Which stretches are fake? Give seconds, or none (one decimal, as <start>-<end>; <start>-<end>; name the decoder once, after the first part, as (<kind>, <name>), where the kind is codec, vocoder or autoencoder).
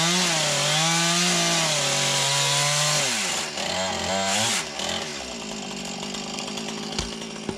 none